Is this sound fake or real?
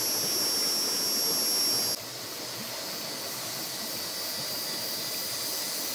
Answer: real